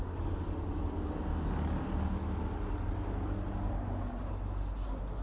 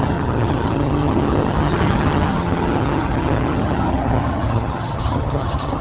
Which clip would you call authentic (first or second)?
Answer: first